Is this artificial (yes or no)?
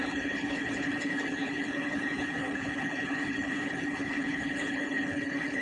yes